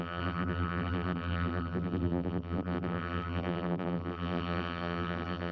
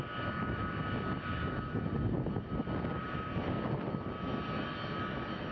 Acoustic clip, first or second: second